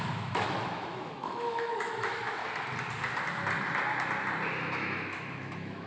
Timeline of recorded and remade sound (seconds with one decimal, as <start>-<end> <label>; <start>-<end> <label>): 0.0-2.4 remade; 2.4-4.6 recorded; 4.6-5.9 remade